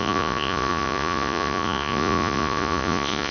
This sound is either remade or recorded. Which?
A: remade